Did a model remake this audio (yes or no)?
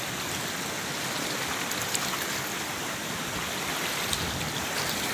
no